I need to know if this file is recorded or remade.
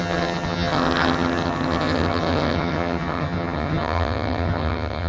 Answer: remade